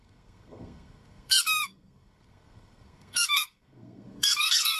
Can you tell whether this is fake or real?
fake